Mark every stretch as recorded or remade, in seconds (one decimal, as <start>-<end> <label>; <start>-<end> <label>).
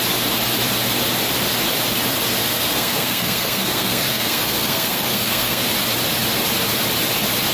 0.0-2.4 recorded; 2.4-5.6 remade; 5.6-7.5 recorded